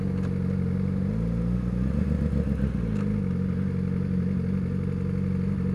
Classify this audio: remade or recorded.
recorded